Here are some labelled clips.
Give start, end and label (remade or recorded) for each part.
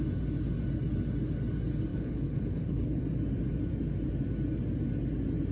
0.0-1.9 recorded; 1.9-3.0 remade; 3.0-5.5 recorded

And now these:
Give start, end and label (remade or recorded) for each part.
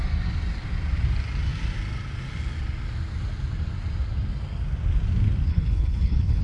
0.0-5.5 recorded; 5.5-6.4 remade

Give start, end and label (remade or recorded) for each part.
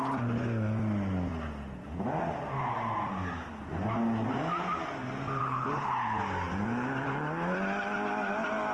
0.0-5.4 recorded; 5.4-6.2 remade; 6.2-8.7 recorded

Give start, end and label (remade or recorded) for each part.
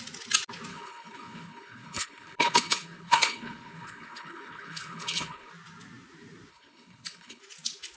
0.0-0.7 recorded; 0.7-5.5 remade; 5.5-6.5 recorded; 6.5-7.4 remade; 7.4-8.0 recorded